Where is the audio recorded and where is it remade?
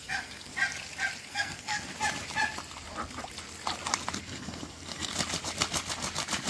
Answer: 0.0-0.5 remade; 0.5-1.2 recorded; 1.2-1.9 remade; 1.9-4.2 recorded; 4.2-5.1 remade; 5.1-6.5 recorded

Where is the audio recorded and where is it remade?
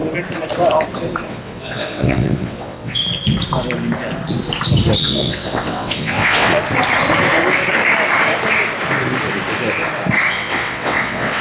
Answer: 0.0-1.3 recorded; 1.3-3.0 remade; 3.0-5.0 recorded; 5.0-6.6 remade; 6.6-10.3 recorded; 10.3-11.4 remade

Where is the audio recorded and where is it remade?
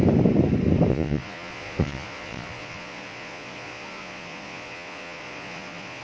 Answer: 0.0-0.9 recorded; 0.9-6.0 remade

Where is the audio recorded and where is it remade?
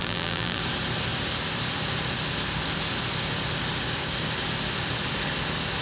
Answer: 0.0-0.6 remade; 0.6-5.8 recorded